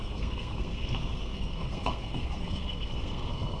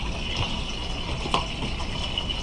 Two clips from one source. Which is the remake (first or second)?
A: first